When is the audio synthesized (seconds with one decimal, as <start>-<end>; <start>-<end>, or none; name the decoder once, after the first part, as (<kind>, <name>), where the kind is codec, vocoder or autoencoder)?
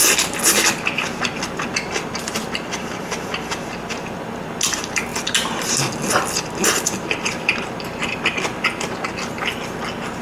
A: none